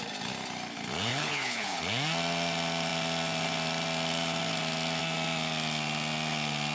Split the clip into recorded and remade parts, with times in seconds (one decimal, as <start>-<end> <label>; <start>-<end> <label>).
0.0-1.1 recorded; 1.1-1.8 remade; 1.8-6.7 recorded